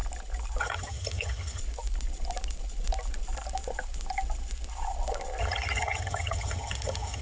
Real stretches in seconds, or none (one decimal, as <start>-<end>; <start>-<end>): 0.0-0.6; 1.6-5.4